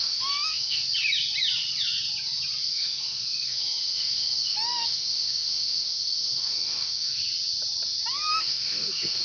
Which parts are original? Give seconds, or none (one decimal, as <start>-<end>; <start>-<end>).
0.8-2.6; 7.2-8.3